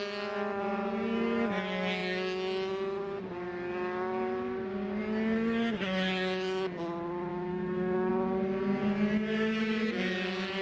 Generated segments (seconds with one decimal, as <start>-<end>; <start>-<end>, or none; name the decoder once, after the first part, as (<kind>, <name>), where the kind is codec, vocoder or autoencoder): 7.3-8.1 (autoencoder, DAC-VAE)